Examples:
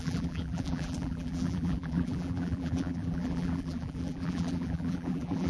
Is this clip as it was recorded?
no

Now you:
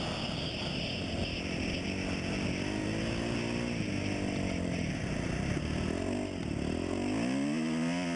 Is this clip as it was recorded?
yes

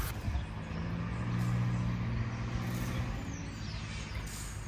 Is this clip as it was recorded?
yes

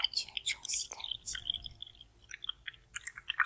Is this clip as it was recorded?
yes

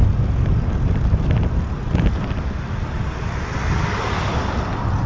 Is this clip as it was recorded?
yes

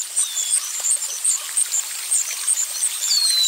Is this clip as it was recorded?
no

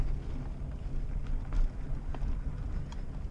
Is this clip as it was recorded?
yes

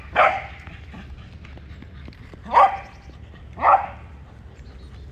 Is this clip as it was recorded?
yes